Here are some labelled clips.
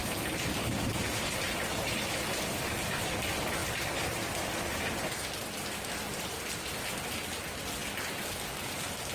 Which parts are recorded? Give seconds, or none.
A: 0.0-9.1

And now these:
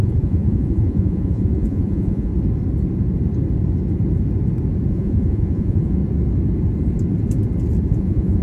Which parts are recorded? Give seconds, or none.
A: 2.3-4.9; 6.0-7.9

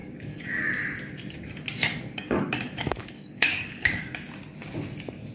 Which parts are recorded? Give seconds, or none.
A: 0.6-1.9; 4.1-5.3

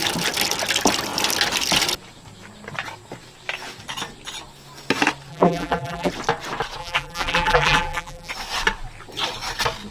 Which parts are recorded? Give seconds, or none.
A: 0.0-5.3; 6.1-6.8; 8.3-9.9

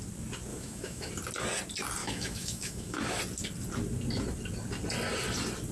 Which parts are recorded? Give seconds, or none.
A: 0.0-0.5; 1.1-2.0; 3.2-5.7

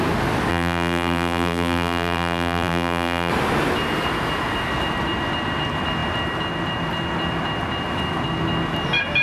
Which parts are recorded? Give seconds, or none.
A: 0.0-0.5; 3.3-9.2

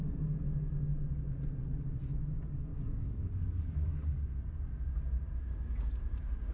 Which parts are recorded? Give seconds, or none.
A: 0.0-2.7; 4.3-6.5